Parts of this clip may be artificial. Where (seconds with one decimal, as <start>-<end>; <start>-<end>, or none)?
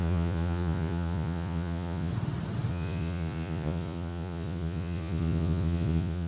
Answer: 0.0-2.1; 2.7-6.3